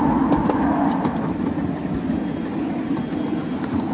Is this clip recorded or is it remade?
recorded